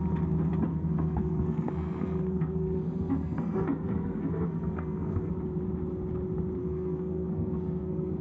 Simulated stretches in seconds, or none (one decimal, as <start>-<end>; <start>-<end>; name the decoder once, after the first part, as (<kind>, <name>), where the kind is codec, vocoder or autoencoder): 0.7-5.3 (codec, SNAC); 6.6-8.2